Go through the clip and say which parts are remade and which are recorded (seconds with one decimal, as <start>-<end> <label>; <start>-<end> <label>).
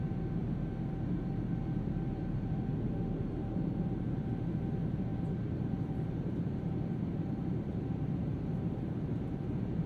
0.0-0.4 recorded; 0.4-4.3 remade; 4.3-5.1 recorded; 5.1-9.4 remade; 9.4-9.9 recorded